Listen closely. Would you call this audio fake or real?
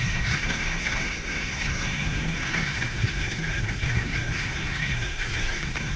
fake